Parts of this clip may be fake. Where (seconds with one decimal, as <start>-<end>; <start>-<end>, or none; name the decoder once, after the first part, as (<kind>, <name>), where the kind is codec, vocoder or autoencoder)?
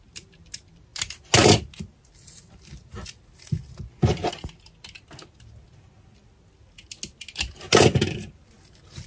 none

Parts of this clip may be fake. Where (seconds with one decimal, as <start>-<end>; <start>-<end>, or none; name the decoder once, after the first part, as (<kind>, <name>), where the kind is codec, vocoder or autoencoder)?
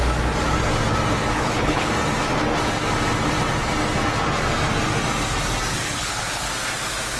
1.3-1.9 (codec, HILCodec); 5.7-6.5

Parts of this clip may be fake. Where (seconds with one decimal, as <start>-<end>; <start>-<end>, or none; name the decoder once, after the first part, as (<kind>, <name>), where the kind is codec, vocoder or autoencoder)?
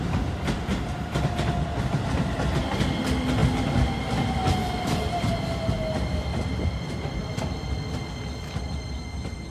4.6-5.3 (vocoder, BigVGAN v2); 6.3-7.3